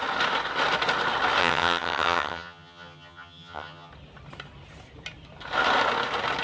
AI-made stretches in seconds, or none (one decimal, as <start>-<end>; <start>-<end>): 1.4-3.9